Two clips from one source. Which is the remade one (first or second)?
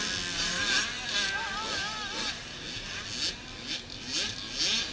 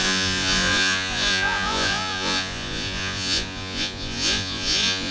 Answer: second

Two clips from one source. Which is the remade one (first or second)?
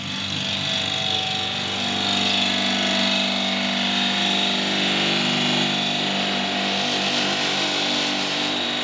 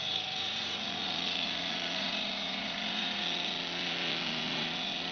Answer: second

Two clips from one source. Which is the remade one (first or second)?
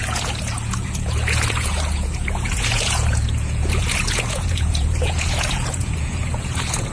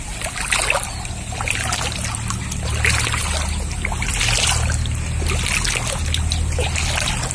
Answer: first